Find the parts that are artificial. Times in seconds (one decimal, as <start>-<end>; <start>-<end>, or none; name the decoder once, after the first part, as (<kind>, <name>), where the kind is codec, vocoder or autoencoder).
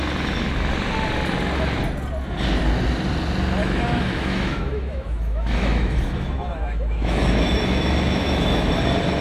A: 3.6-8.7 (autoencoder, DAC-VAE)